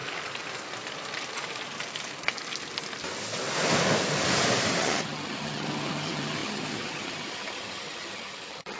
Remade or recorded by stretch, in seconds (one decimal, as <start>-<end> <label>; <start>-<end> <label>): 0.0-4.8 recorded; 4.8-8.8 remade